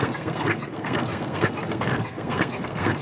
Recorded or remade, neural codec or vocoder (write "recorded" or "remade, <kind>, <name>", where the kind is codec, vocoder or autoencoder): remade, codec, SNAC